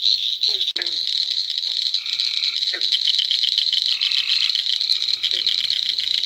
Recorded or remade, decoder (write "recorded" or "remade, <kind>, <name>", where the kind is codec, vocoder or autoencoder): recorded